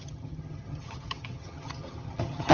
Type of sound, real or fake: fake